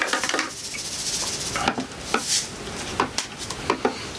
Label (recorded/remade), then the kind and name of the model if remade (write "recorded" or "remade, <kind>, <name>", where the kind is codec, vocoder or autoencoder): recorded